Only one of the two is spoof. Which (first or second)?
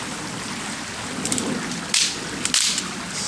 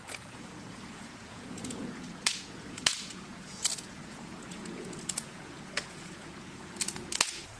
second